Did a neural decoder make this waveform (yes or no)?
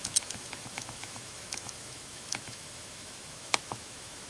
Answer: yes